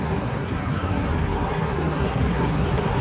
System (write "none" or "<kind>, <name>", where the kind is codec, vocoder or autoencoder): codec, SNAC